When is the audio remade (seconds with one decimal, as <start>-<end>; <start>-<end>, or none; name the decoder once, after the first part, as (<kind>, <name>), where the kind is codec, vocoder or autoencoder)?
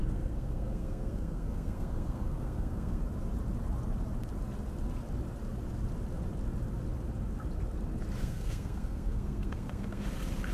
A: 0.0-3.0 (codec, SNAC); 8.2-10.0